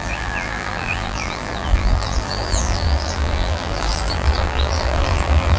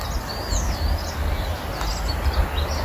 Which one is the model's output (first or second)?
first